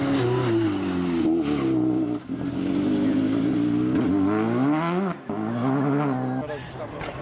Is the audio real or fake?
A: real